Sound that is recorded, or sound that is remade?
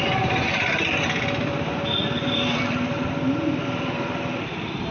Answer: recorded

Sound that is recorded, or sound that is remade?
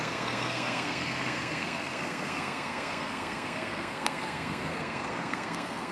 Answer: remade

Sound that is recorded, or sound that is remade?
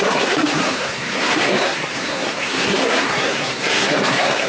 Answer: remade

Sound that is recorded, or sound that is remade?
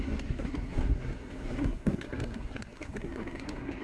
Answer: remade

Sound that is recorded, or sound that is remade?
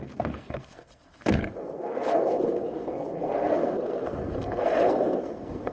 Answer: remade